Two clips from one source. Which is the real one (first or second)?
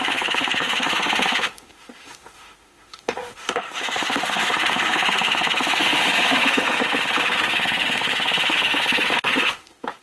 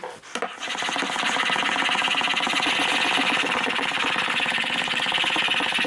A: second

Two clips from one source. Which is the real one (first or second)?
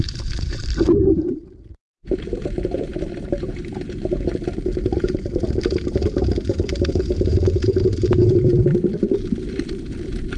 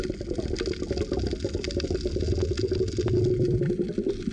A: second